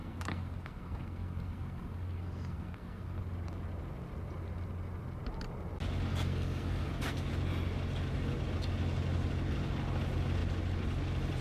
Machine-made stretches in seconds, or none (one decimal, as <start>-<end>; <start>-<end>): 0.0-3.2; 6.1-7.3